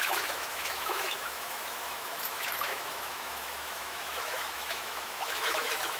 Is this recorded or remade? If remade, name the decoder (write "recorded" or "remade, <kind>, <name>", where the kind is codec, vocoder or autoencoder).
remade, autoencoder, DAC-VAE